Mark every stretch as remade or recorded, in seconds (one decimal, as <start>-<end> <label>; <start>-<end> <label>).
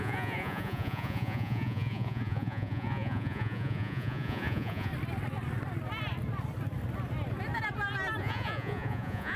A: 0.0-4.9 remade; 4.9-8.2 recorded; 8.2-9.4 remade